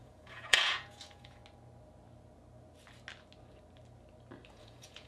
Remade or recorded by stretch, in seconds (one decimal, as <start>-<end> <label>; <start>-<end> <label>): 0.0-1.4 remade; 1.4-4.5 recorded; 4.5-5.1 remade